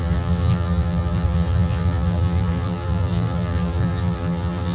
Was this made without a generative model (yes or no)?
no